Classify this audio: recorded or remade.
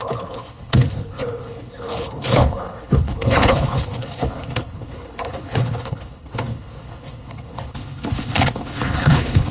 remade